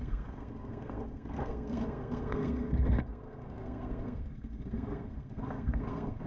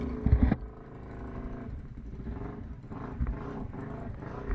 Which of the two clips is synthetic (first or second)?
first